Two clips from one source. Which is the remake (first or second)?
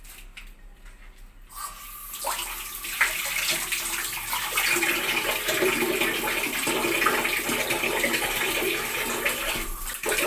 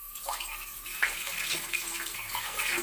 second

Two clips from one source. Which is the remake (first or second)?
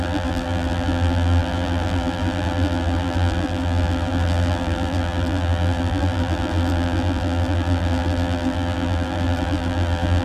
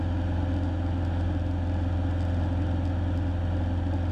first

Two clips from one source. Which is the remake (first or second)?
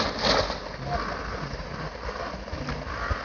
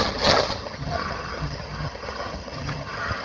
second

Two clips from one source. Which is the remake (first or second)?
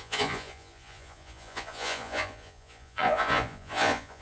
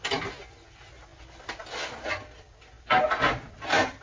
first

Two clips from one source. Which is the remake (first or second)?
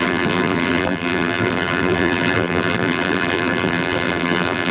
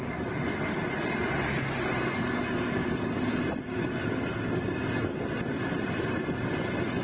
first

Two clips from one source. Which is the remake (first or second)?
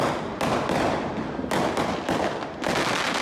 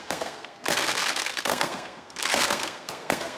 second